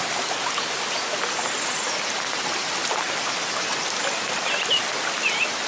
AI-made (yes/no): no